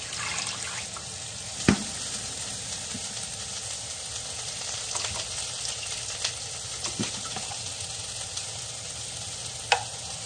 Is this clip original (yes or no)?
yes